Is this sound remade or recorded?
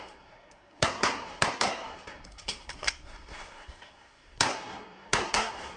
remade